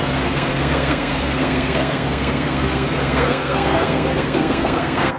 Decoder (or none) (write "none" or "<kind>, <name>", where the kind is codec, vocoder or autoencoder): codec, SNAC